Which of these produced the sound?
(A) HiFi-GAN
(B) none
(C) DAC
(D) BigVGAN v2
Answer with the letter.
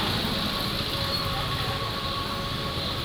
B